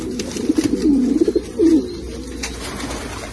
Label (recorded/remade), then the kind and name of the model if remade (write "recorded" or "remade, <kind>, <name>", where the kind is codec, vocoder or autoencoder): recorded